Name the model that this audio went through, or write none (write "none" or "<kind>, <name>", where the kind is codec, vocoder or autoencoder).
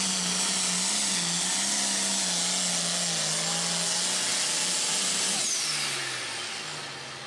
none